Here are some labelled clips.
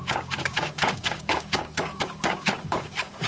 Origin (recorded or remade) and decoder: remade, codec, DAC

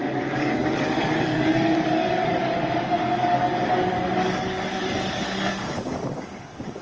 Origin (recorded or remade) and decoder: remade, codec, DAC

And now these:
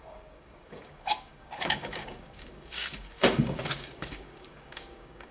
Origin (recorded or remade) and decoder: remade, codec, DAC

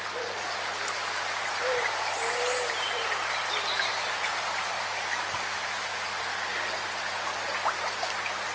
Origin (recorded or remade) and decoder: recorded